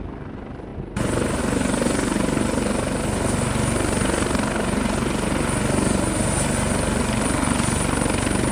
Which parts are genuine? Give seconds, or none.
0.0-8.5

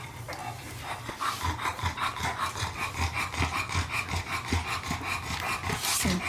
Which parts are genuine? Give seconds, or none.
0.0-6.3

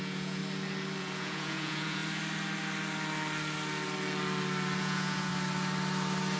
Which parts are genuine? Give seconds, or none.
0.4-1.0; 2.0-4.8; 5.3-6.4

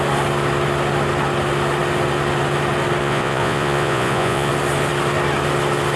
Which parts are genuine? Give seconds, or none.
0.0-3.0; 4.5-6.0